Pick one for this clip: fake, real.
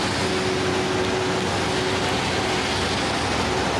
real